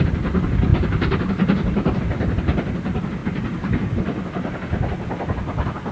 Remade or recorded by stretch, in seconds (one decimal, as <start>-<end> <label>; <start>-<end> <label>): 0.0-5.9 recorded